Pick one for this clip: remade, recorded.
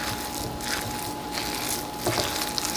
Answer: recorded